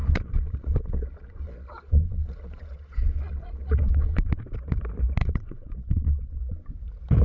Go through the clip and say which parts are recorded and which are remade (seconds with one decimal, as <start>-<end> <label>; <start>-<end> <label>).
0.0-4.3 remade; 4.3-5.2 recorded; 5.2-6.4 remade; 6.4-7.2 recorded